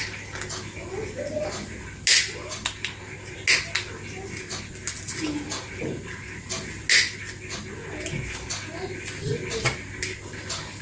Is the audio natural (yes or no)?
yes